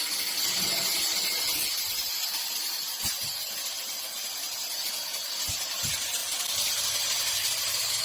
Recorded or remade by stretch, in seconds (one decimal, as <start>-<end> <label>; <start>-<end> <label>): 0.0-8.0 recorded